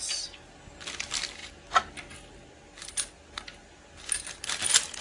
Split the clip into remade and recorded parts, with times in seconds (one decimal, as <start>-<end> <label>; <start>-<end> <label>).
0.0-5.0 recorded